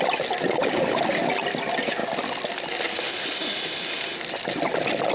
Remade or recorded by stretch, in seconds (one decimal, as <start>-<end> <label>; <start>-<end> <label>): 0.0-5.1 recorded